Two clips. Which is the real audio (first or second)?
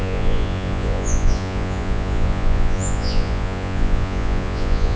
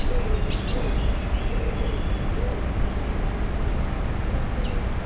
second